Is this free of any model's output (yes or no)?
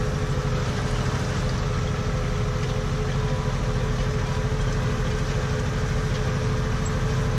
yes